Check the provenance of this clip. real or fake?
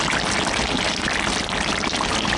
real